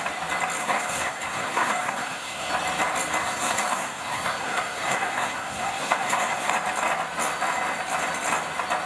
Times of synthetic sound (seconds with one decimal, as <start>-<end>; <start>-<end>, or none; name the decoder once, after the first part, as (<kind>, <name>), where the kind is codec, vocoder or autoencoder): 0.6-2.5 (codec, SNAC); 3.2-6.5